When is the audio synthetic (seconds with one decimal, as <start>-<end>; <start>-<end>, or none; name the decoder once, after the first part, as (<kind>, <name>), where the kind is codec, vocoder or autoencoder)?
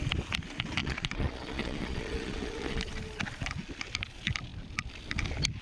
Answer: 0.8-2.8 (vocoder, Vocos)